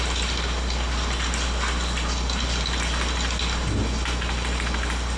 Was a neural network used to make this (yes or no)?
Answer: no